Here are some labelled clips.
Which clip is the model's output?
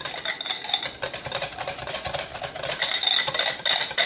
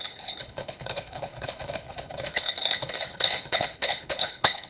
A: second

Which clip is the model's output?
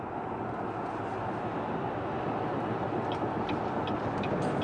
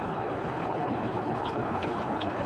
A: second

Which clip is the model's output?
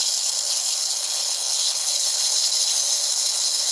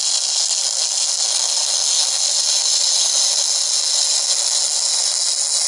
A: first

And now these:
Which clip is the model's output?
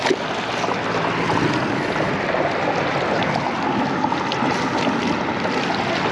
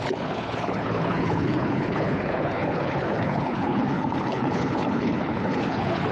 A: second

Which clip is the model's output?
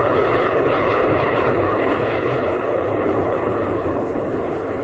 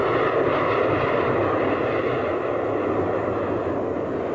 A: first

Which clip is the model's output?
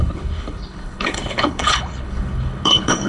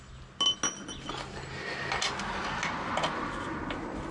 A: first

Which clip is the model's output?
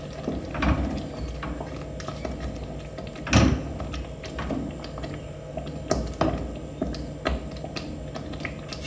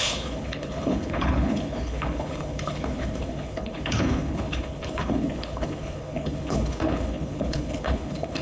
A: second